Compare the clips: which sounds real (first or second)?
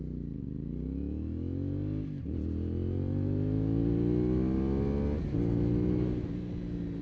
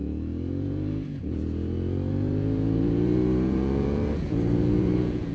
first